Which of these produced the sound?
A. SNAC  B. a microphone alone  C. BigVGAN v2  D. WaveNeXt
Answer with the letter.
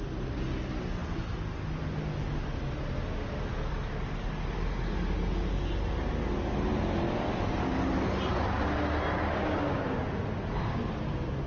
B